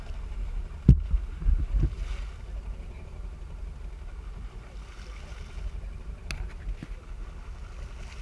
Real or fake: real